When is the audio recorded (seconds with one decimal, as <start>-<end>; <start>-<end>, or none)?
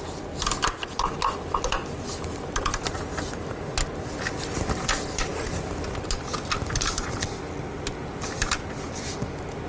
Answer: 0.0-9.7